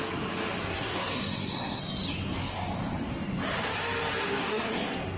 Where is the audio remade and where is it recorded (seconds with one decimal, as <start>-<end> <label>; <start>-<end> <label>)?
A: 0.0-0.6 recorded; 0.6-1.8 remade; 1.8-4.4 recorded; 4.4-5.2 remade